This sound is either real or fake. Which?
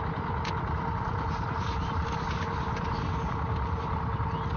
real